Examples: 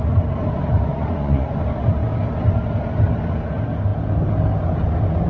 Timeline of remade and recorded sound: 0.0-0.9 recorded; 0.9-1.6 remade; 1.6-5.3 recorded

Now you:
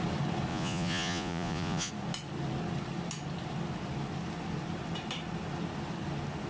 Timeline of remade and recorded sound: 0.0-0.5 recorded; 0.5-1.9 remade; 1.9-6.5 recorded

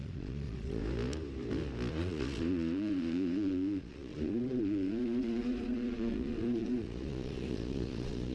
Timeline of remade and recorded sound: 0.0-0.8 remade; 0.8-1.9 recorded; 1.9-8.3 remade

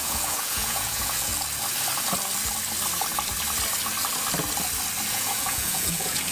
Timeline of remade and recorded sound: 0.0-1.3 remade; 1.3-5.1 recorded; 5.1-6.3 remade

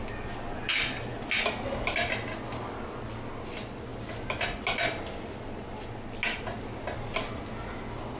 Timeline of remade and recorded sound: 0.0-8.2 recorded

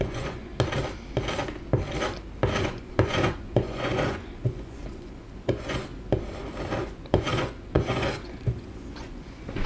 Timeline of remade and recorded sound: 0.0-0.5 remade; 0.5-2.6 recorded; 2.6-5.9 remade; 5.9-6.8 recorded; 6.8-9.7 remade

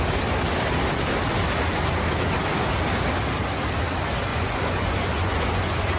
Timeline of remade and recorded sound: 0.0-4.3 recorded; 4.3-6.0 remade